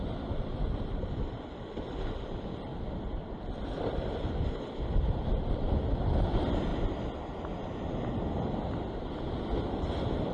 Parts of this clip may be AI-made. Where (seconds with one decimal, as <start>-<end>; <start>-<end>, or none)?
0.0-2.7; 6.1-6.7; 9.9-10.3